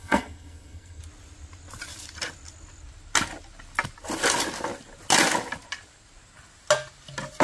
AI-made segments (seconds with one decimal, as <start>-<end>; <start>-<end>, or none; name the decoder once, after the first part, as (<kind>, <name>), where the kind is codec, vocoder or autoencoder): 0.0-1.0 (codec, SNAC)